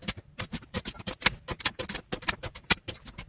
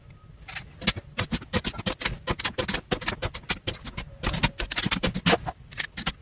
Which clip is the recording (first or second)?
second